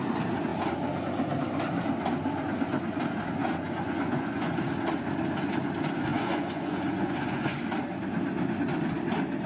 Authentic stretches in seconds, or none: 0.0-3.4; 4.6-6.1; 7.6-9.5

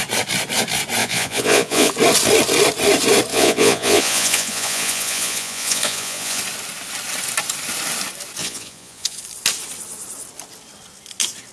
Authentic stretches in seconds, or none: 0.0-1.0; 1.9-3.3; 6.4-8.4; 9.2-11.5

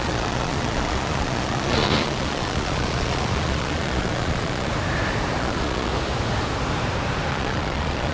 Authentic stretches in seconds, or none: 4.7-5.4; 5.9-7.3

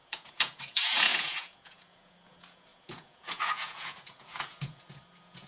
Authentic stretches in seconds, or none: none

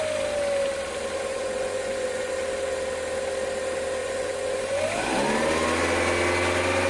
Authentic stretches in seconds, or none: 0.0-1.3; 2.3-4.0; 4.8-6.9

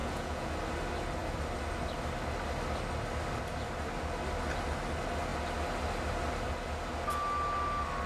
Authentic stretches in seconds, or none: 0.5-8.1